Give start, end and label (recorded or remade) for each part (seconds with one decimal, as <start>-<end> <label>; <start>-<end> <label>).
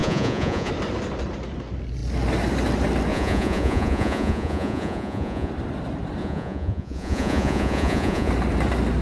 0.0-0.7 remade; 0.7-3.1 recorded; 3.1-5.5 remade; 5.5-6.2 recorded; 6.2-8.3 remade; 8.3-9.0 recorded